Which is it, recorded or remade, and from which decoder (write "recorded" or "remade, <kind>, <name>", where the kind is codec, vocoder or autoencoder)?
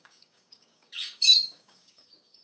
remade, codec, DAC